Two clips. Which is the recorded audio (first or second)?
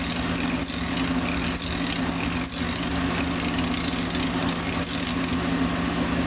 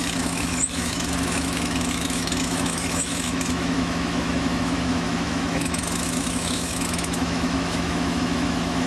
first